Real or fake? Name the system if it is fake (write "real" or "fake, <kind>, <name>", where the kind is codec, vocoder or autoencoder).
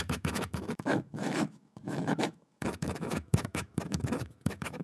fake, autoencoder, DAC-VAE